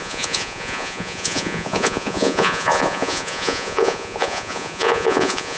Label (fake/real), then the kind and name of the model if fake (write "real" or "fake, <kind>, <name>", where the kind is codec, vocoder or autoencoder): fake, vocoder, Vocos